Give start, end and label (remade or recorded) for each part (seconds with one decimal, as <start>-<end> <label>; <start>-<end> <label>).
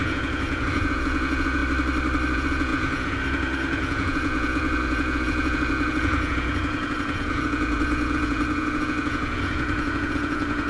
0.0-1.6 remade; 1.6-2.3 recorded; 2.3-10.7 remade